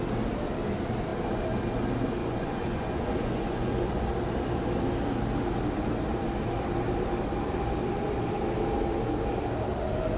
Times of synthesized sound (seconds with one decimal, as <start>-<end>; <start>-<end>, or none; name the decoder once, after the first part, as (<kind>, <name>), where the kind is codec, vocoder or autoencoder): 2.2-4.0 (vocoder, Vocos)